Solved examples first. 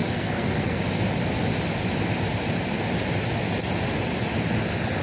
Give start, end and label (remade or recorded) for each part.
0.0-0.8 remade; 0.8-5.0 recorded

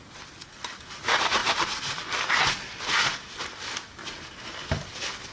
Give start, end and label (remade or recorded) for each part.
0.0-5.3 recorded

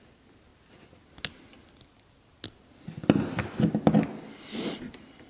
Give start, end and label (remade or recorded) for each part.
0.0-5.3 recorded

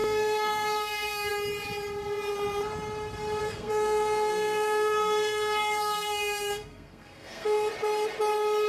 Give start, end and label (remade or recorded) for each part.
0.0-1.3 remade; 1.3-3.4 recorded; 3.4-7.7 remade; 7.7-8.7 recorded

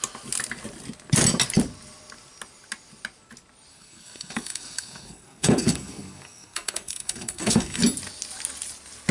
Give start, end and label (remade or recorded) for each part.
0.0-3.7 recorded; 3.7-7.8 remade; 7.8-9.1 recorded

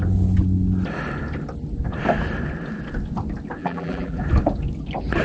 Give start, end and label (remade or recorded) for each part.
0.0-3.6 recorded; 3.6-4.2 remade; 4.2-5.2 recorded

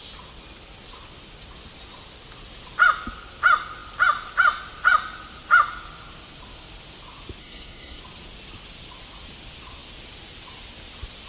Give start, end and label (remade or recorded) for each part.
0.0-7.4 recorded; 7.4-8.0 remade; 8.0-11.3 recorded

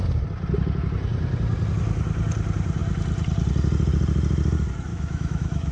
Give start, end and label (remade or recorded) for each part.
0.0-4.9 recorded; 4.9-5.7 remade